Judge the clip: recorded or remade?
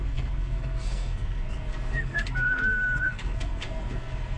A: remade